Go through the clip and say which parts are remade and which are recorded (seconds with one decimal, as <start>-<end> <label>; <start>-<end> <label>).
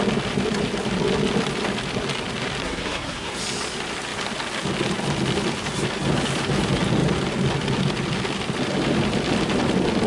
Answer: 0.0-2.6 recorded; 2.6-3.4 remade; 3.4-10.1 recorded